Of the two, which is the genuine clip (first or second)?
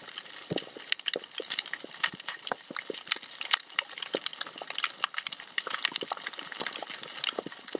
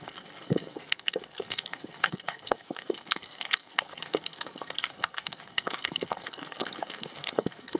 first